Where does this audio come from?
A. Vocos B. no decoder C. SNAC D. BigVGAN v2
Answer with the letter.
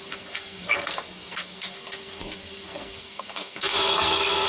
C